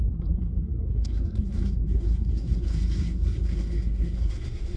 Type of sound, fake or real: fake